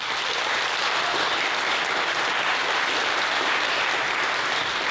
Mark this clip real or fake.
real